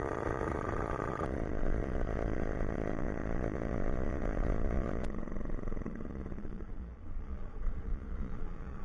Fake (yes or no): yes